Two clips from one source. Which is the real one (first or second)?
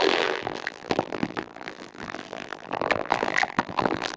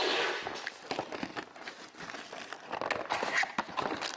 second